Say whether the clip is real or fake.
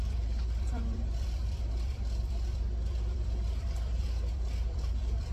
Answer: fake